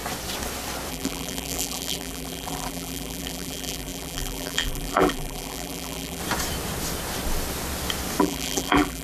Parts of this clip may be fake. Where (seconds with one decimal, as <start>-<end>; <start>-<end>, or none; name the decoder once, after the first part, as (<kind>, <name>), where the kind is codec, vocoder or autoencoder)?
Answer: 0.9-6.2 (vocoder, BigVGAN v2); 8.2-9.0